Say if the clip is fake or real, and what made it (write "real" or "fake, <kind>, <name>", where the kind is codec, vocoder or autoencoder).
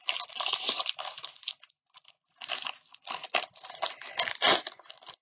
real